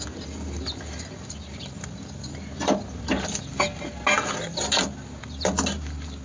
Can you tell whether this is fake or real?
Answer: real